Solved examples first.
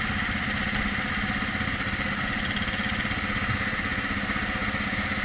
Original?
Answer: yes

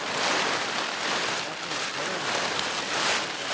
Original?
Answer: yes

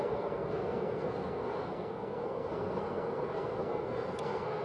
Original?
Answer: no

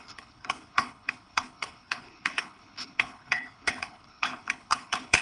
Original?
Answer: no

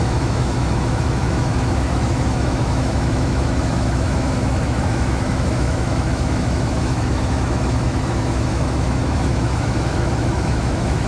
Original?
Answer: no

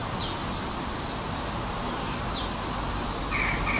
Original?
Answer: yes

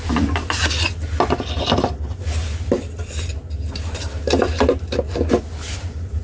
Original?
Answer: yes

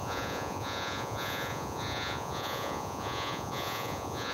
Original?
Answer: no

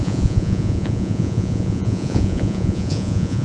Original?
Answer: no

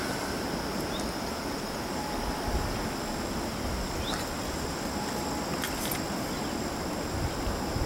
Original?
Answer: yes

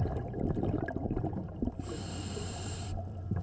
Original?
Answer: no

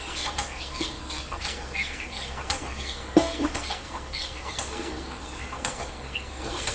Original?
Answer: no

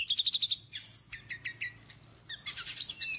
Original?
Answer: yes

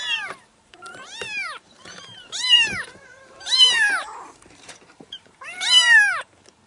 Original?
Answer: no